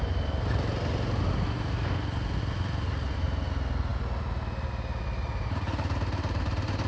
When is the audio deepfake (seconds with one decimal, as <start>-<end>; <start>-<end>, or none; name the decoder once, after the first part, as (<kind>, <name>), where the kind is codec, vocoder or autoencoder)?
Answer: none